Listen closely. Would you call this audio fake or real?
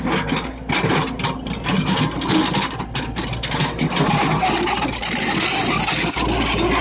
real